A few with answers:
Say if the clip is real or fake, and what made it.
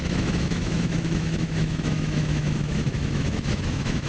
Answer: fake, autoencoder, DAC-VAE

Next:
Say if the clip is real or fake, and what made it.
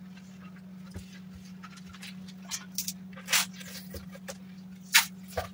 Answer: real